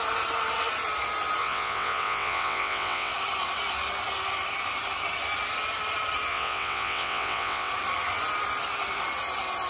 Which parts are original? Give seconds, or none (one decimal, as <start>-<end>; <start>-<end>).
0.0-1.4; 3.1-6.3; 7.7-9.7